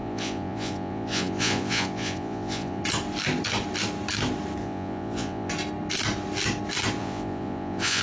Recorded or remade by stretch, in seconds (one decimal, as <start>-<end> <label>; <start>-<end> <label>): 0.0-2.8 remade; 2.8-4.6 recorded; 4.6-5.5 remade; 5.5-7.0 recorded; 7.0-8.0 remade